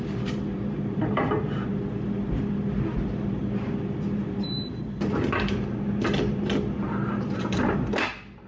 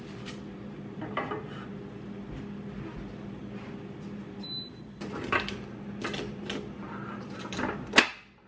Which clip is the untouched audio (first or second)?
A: second